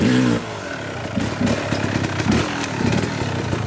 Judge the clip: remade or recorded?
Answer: recorded